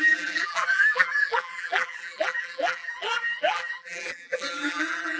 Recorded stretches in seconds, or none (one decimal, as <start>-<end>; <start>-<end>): none